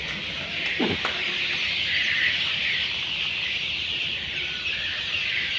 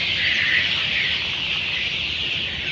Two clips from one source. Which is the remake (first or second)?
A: first